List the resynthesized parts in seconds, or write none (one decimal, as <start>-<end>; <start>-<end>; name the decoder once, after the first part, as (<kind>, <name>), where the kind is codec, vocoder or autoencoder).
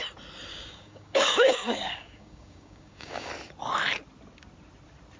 0.5-3.3 (codec, DAC)